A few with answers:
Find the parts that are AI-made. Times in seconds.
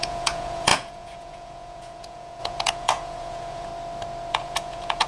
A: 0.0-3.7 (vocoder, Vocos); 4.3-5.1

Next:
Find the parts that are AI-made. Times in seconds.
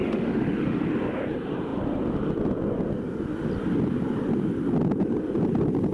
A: 0.0-0.8 (autoencoder, DAC-VAE)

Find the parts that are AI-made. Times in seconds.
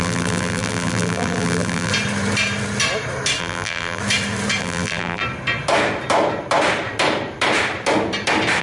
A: 0.0-1.9 (vocoder, BigVGAN v2); 3.4-4.0; 4.6-5.2